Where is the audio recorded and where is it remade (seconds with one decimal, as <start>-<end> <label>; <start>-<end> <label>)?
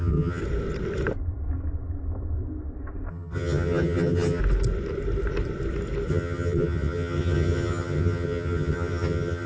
0.0-0.4 remade; 0.4-3.1 recorded; 3.1-4.4 remade; 4.4-6.1 recorded; 6.1-9.5 remade